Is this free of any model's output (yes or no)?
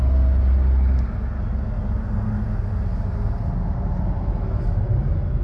yes